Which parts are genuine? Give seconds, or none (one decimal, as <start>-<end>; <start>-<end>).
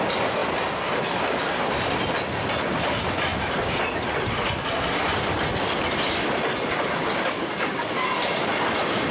0.0-7.0; 7.9-9.1